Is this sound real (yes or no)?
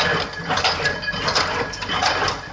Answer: yes